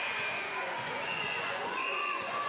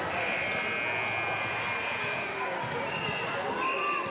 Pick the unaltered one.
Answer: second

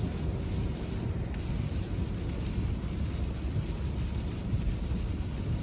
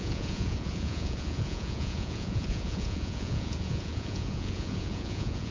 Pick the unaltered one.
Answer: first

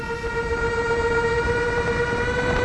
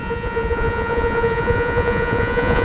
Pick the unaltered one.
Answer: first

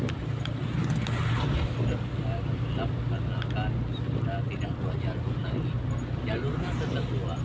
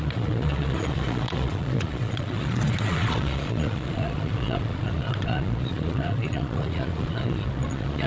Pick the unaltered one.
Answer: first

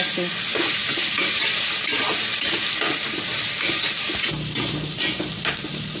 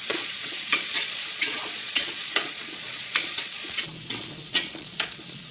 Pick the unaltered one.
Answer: first